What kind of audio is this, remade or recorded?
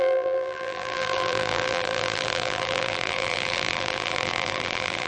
remade